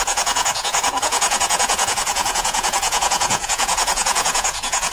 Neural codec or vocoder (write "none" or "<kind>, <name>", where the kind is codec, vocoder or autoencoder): vocoder, Vocos